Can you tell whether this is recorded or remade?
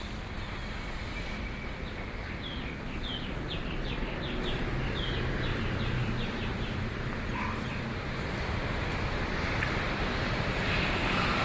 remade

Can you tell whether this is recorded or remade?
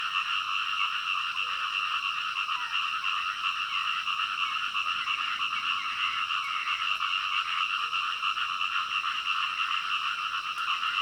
recorded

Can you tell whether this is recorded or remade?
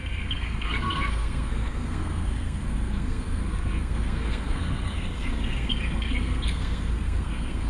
remade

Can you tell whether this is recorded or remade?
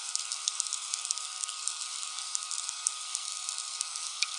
remade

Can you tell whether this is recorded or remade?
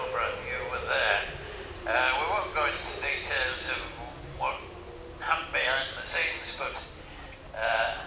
recorded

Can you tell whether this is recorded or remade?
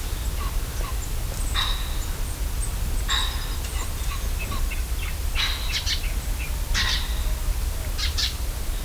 recorded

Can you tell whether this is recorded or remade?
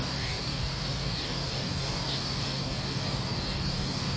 remade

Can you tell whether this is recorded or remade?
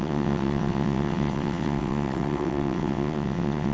remade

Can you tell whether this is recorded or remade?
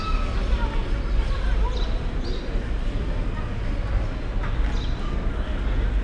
recorded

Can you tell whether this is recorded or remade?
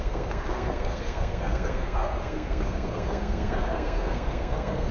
remade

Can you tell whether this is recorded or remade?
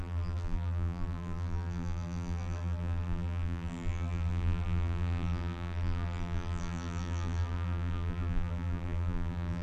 remade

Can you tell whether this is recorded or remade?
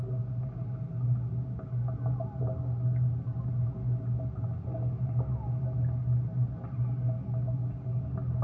recorded